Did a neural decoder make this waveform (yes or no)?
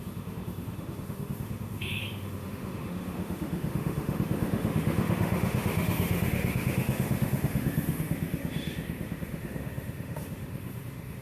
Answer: yes